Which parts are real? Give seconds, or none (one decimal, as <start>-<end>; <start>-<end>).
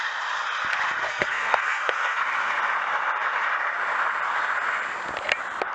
0.0-1.1; 2.2-5.7